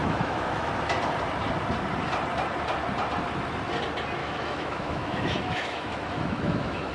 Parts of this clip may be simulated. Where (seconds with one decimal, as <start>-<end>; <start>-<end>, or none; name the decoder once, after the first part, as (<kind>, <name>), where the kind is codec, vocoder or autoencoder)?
0.0-0.7 (autoencoder, DAC-VAE); 4.2-6.9